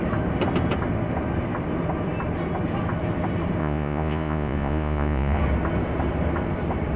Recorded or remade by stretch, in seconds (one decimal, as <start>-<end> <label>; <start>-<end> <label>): 0.0-3.6 recorded; 3.6-5.4 remade; 5.4-7.0 recorded